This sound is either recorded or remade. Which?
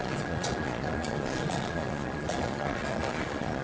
remade